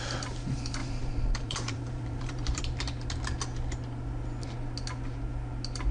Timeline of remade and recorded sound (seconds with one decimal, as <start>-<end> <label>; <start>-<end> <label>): 0.0-0.8 recorded; 0.8-2.6 remade; 2.6-5.9 recorded